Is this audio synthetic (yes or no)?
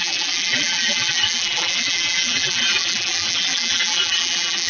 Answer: yes